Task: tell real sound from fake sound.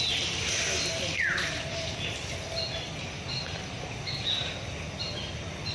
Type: real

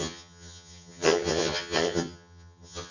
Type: fake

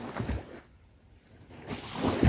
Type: real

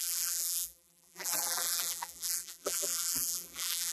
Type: fake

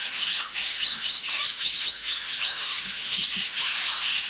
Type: fake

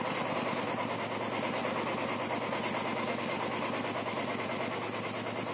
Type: real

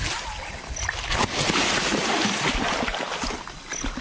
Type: real